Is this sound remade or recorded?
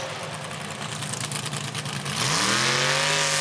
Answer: recorded